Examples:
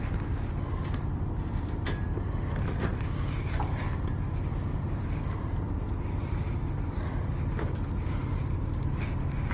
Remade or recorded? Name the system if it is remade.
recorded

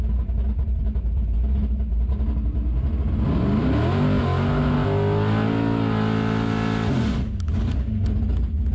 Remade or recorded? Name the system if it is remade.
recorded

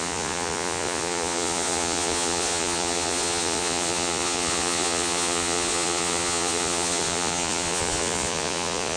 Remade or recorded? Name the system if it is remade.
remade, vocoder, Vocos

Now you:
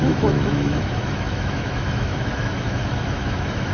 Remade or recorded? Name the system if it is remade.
remade, autoencoder, DAC-VAE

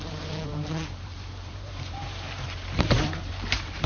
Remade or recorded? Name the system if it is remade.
remade, vocoder, BigVGAN v2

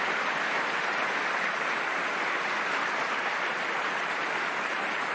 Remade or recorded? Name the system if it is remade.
recorded